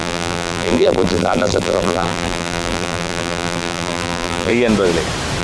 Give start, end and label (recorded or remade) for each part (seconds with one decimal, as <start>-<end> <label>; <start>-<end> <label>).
0.0-4.5 remade; 4.5-5.4 recorded